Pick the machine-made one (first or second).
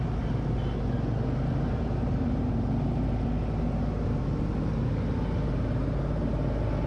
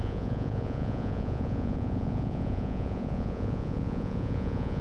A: second